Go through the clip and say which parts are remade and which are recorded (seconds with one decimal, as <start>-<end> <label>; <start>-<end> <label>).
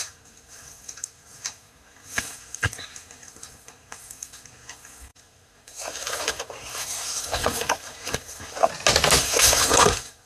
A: 0.0-8.7 remade; 8.7-9.2 recorded; 9.2-10.3 remade